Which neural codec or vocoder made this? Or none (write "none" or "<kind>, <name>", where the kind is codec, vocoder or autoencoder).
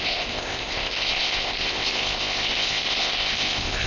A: codec, ZipCodec